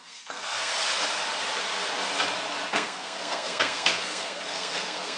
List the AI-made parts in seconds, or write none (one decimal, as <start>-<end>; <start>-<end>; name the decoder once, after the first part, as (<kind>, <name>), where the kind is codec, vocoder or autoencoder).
0.0-0.7 (codec, SNAC); 2.7-5.2